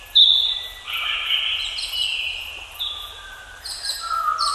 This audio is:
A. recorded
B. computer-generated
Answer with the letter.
A